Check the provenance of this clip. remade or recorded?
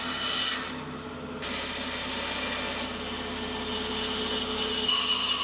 recorded